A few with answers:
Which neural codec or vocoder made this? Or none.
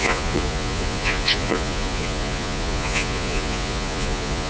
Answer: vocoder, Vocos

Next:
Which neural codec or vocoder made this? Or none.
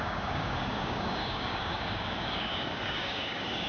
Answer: codec, DAC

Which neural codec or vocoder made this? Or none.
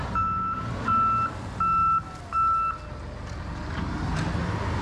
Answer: none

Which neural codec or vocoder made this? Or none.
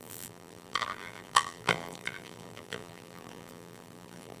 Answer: vocoder, BigVGAN v2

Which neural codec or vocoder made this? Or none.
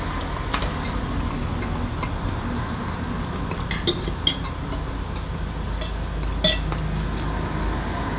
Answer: none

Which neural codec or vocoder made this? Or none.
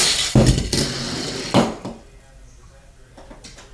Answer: none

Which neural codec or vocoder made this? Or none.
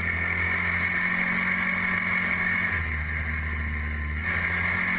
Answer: none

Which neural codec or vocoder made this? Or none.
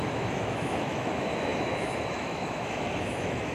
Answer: autoencoder, DAC-VAE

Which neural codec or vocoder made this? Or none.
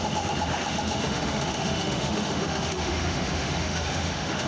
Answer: autoencoder, DAC-VAE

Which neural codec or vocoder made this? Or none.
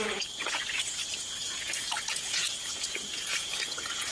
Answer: vocoder, Vocos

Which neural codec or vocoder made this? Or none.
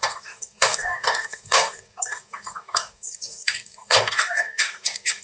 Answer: codec, DAC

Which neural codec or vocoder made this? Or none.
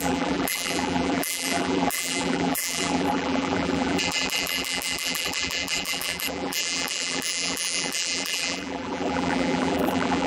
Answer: vocoder, BigVGAN v2